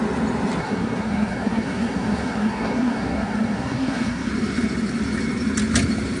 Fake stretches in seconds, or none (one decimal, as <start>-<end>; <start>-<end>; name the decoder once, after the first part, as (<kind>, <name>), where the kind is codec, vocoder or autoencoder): 0.6-4.3 (codec, SNAC)